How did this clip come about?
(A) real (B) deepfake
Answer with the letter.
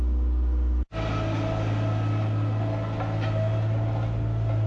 A